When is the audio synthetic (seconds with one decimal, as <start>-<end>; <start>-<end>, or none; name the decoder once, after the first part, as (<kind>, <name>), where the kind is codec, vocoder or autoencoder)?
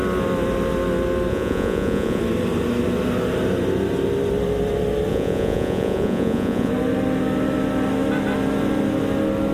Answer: 1.3-2.2 (vocoder, Vocos); 5.1-6.7